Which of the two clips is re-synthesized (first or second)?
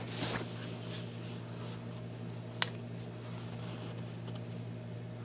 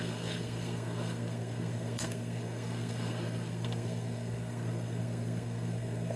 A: second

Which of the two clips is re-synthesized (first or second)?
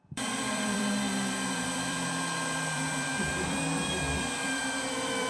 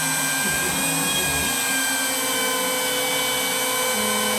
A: first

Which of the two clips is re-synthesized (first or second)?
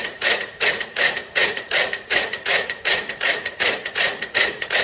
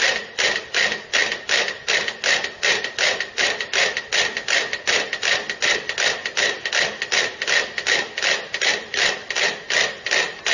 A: first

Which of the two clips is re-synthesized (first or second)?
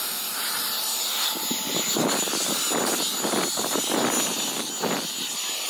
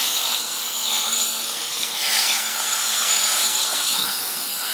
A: second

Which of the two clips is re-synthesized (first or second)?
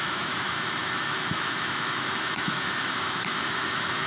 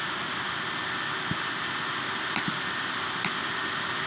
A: first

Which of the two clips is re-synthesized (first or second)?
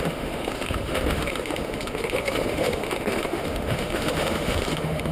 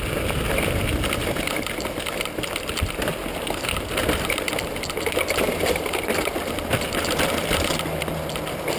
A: first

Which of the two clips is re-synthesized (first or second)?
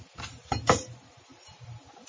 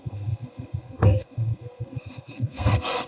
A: second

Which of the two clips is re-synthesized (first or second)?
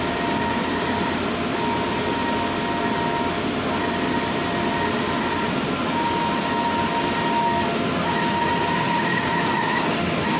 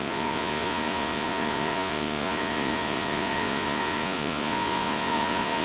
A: second